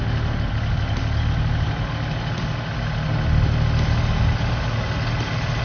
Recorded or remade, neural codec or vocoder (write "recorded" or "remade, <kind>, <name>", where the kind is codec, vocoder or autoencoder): recorded